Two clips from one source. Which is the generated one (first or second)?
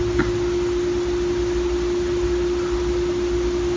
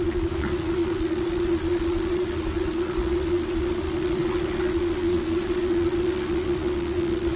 second